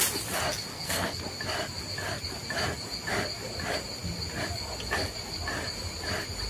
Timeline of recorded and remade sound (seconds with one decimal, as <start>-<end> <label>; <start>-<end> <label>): 0.0-0.7 recorded; 0.7-1.2 remade; 1.2-6.5 recorded